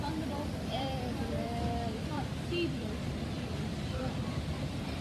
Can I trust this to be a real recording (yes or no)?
no